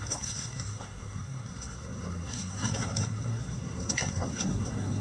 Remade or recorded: remade